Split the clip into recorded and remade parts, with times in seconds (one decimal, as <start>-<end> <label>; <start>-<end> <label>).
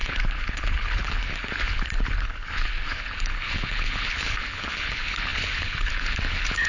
0.0-6.7 remade